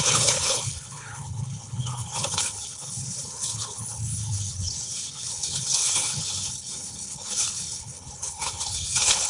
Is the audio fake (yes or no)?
yes